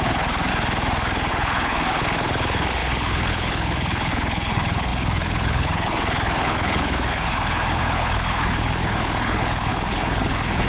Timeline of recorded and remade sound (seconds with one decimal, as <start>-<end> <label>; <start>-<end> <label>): 0.0-0.5 remade; 0.5-1.3 recorded; 1.3-10.7 remade